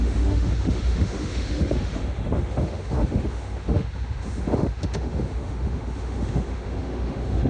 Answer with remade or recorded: remade